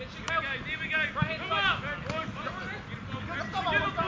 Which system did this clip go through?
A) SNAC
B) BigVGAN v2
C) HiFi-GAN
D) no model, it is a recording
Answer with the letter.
D